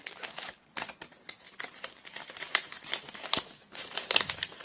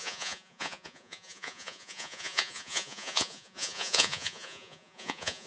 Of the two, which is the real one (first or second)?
first